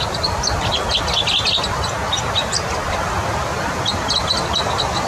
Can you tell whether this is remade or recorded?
recorded